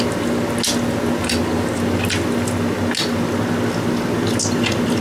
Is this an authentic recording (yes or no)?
yes